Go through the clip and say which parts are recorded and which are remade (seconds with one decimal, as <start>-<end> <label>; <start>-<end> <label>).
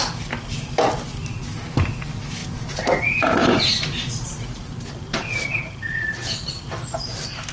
0.0-2.4 recorded; 2.4-6.5 remade; 6.5-7.5 recorded